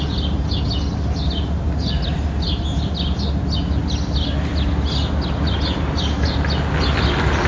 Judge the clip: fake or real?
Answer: real